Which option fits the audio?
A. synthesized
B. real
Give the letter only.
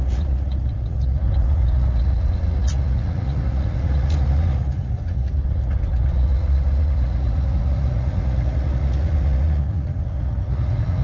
A